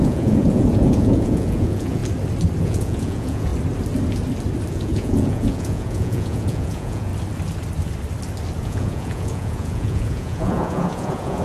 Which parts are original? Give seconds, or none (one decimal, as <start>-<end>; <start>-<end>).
2.0-2.6; 3.5-4.7; 7.1-8.6